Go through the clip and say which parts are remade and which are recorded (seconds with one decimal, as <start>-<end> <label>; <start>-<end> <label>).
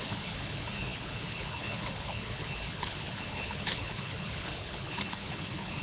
0.0-5.8 remade